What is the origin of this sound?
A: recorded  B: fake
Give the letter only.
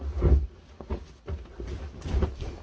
A